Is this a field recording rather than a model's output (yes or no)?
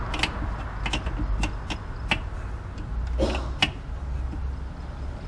yes